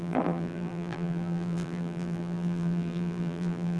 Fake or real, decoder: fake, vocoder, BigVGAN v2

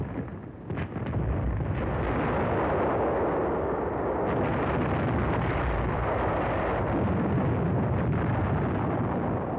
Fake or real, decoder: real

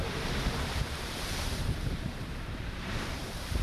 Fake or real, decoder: fake, vocoder, BigVGAN v2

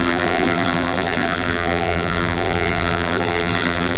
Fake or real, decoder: fake, vocoder, BigVGAN v2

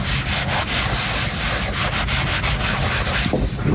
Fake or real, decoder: real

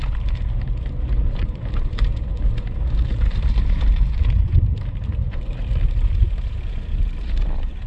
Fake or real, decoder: fake, vocoder, BigVGAN v2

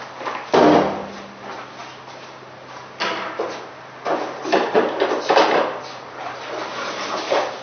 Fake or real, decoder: real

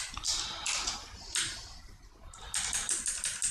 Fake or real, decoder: real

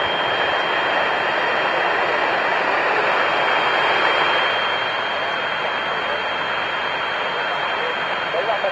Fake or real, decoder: real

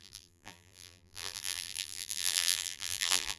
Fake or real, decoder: fake, vocoder, BigVGAN v2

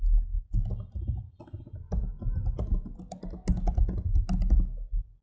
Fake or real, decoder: real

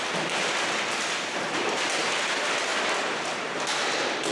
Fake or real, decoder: fake, vocoder, BigVGAN v2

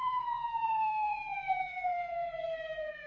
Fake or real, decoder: fake, vocoder, BigVGAN v2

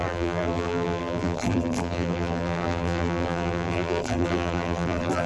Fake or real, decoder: fake, vocoder, BigVGAN v2